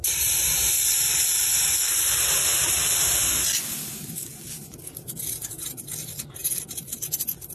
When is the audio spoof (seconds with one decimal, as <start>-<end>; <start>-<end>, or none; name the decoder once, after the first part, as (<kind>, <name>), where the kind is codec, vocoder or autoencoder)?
none